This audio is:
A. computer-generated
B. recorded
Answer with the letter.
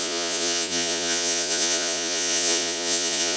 A